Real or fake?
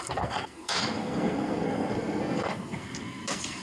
fake